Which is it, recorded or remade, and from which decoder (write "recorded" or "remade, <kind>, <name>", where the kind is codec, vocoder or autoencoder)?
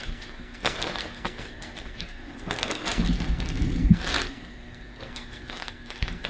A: remade, codec, SNAC